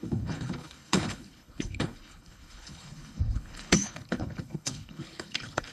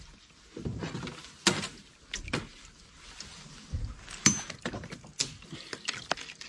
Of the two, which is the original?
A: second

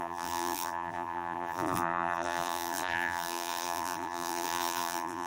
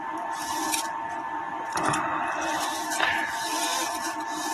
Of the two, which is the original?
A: second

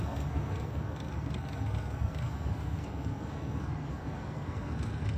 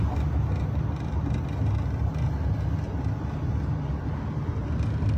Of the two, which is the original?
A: second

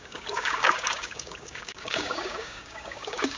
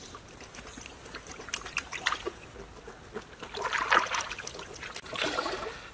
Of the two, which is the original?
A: second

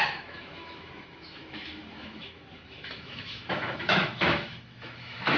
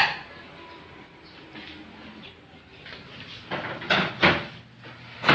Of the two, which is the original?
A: second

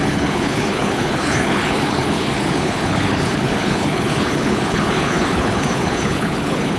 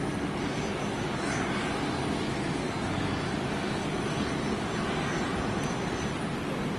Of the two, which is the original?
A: second